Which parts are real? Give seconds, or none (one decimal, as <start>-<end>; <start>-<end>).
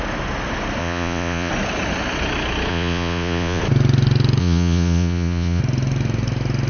0.0-0.8; 1.5-2.7; 3.6-4.4; 5.6-6.7